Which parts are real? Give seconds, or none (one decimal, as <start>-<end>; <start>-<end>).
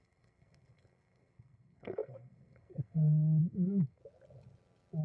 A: 4.0-5.0